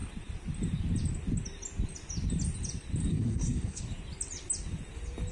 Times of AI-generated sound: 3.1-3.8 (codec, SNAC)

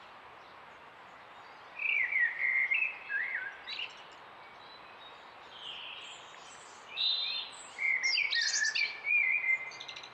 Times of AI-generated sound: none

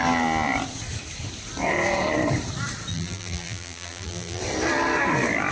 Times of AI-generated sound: 2.9-4.4 (vocoder, BigVGAN v2)